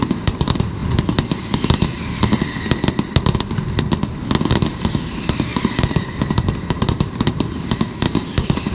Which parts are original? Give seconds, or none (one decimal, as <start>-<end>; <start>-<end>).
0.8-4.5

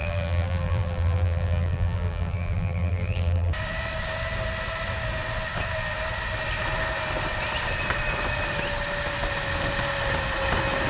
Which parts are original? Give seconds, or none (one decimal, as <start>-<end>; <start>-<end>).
3.5-10.9

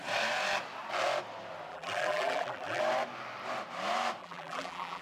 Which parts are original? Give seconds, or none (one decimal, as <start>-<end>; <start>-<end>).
0.0-1.7; 2.8-4.2

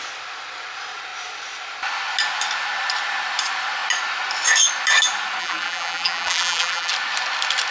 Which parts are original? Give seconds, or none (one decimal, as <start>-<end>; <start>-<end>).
0.0-5.4; 6.9-7.7

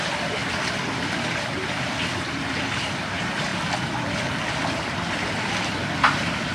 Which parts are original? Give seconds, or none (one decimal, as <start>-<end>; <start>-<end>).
0.4-2.5; 3.5-4.6

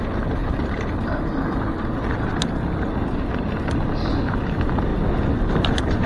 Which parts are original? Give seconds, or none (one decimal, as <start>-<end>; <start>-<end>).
0.0-0.4; 4.1-4.9; 5.4-6.1

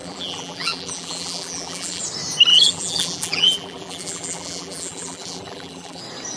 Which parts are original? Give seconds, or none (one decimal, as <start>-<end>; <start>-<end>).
2.0-2.5; 6.0-6.4